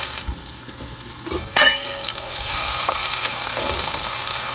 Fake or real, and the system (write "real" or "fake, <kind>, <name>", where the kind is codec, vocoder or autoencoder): fake, codec, SNAC